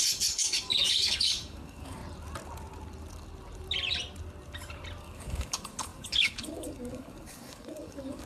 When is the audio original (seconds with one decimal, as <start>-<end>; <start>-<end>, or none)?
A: 2.0-5.0